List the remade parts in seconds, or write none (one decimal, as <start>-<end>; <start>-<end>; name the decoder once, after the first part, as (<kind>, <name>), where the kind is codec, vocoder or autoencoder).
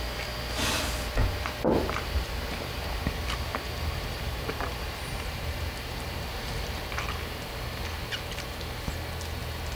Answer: 1.2-3.1 (vocoder, BigVGAN v2); 3.5-7.6; 8.0-9.4